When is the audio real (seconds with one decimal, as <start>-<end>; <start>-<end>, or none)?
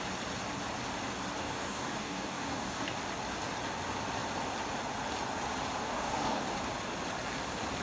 0.0-1.4; 3.0-5.8; 6.4-7.8